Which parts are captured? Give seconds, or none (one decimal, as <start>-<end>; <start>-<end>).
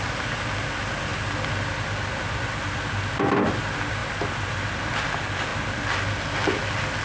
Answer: 0.0-7.0